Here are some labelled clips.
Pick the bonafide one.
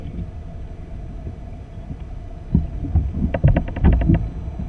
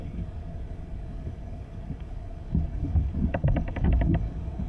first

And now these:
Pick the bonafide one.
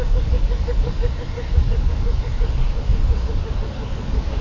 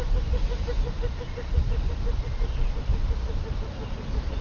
second